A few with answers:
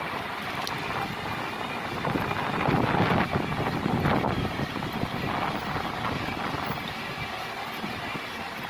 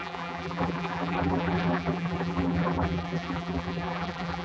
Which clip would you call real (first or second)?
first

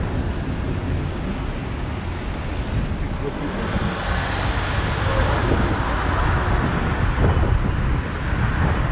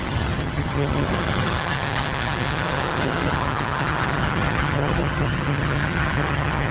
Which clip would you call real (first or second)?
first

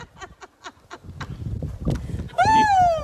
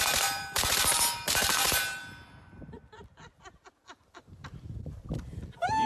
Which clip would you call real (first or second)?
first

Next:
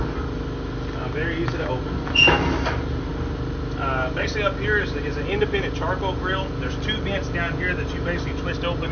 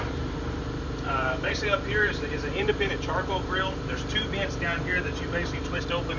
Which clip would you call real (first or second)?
first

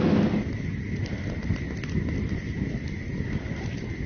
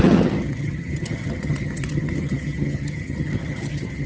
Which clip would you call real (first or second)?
first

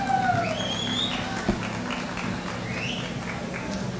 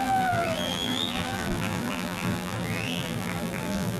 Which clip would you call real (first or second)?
first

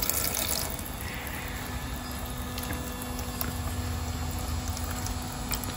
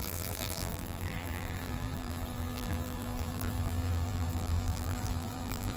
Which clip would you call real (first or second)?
first